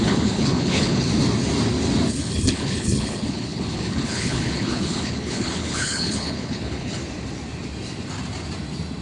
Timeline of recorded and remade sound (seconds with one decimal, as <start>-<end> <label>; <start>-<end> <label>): 0.0-1.1 remade; 1.1-2.1 recorded; 2.1-7.0 remade; 7.0-9.0 recorded